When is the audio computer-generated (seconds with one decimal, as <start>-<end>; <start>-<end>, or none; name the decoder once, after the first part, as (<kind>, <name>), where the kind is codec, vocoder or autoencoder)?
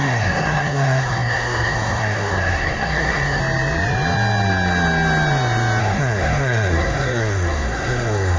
0.0-3.4 (codec, SNAC); 5.8-8.4